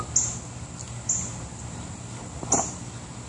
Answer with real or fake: real